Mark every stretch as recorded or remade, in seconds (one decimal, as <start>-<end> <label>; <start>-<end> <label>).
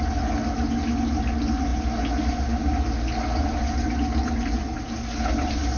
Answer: 0.0-5.8 recorded